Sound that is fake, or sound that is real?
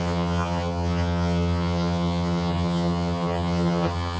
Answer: fake